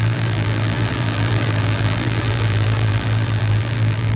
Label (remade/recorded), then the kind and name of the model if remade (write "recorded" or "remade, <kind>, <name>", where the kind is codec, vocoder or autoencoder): remade, vocoder, BigVGAN v2